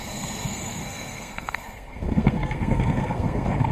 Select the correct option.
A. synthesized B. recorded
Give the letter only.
A